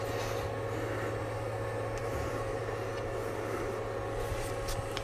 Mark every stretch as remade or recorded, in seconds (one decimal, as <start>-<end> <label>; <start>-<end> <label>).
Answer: 0.0-2.0 recorded; 2.0-2.6 remade; 2.6-5.0 recorded